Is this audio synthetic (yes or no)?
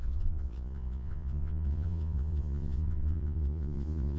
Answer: yes